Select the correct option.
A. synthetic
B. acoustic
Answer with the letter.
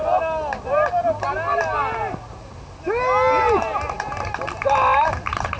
B